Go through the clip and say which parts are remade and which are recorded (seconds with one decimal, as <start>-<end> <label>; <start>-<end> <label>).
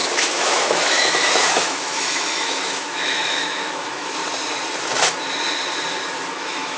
0.0-4.2 remade; 4.2-6.3 recorded; 6.3-6.8 remade